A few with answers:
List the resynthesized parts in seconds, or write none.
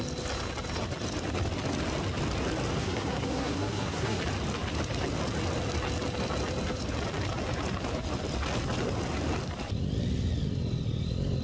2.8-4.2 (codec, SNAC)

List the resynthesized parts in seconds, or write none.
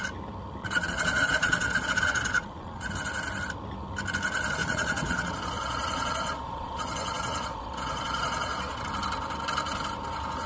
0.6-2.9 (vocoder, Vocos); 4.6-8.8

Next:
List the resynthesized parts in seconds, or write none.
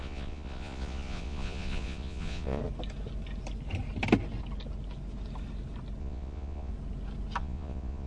0.0-2.6 (vocoder, Vocos); 6.0-6.7; 7.4-8.1